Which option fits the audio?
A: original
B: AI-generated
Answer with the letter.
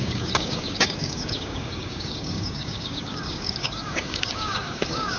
B